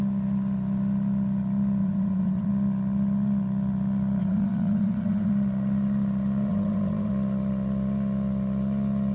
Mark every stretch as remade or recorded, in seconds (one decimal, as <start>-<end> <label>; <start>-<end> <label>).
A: 0.0-1.8 recorded; 1.8-2.5 remade; 2.5-4.2 recorded; 4.2-5.3 remade; 5.3-6.5 recorded; 6.5-7.1 remade; 7.1-9.1 recorded